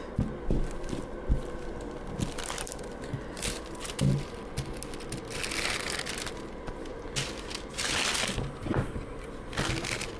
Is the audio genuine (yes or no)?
yes